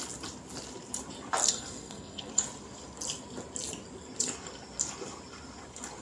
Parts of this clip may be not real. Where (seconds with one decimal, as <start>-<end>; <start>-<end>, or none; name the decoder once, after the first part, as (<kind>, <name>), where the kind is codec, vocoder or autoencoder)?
1.4-2.3 (codec, SNAC)